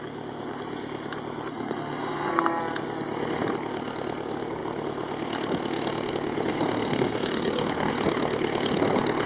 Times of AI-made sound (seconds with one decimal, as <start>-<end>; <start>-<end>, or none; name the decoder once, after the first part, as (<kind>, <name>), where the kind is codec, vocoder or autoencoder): 1.5-2.6 (codec, SNAC); 6.5-7.9